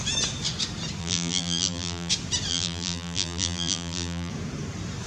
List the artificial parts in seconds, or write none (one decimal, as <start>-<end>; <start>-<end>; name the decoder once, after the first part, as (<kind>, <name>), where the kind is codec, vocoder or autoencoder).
1.0-2.1 (vocoder, BigVGAN v2); 2.5-4.3